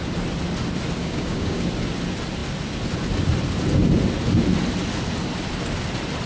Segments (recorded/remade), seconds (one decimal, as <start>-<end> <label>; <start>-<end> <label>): 0.0-1.0 recorded; 1.0-1.6 remade; 1.6-6.3 recorded